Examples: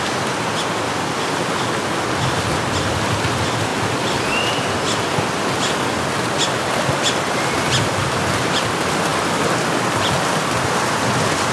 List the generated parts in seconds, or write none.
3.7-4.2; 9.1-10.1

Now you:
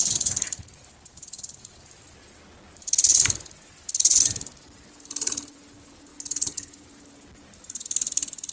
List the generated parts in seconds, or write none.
none

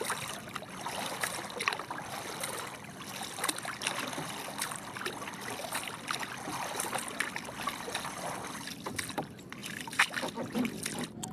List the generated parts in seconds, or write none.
none

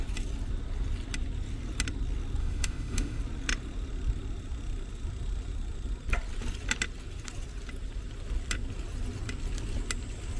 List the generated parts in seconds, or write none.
2.4-3.2

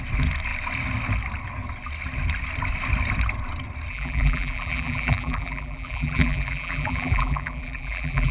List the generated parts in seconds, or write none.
3.9-8.3